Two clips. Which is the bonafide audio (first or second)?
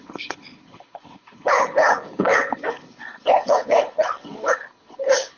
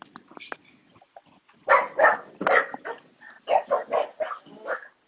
second